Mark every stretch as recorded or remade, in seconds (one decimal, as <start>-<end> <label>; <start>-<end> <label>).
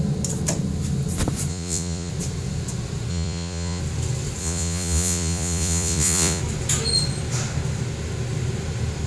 0.0-1.5 recorded; 1.5-2.1 remade; 2.1-3.1 recorded; 3.1-3.8 remade; 3.8-4.4 recorded; 4.4-6.4 remade; 6.4-9.1 recorded